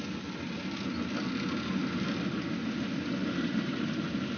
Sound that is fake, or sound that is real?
real